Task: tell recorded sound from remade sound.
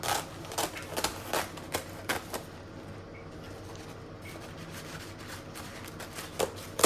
recorded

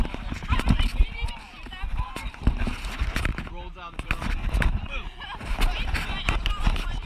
recorded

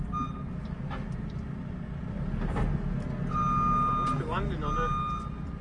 recorded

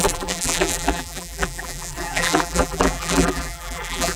remade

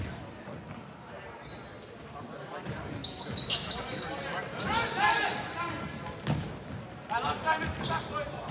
recorded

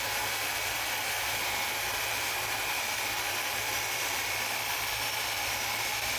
remade